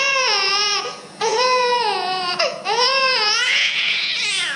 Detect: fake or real fake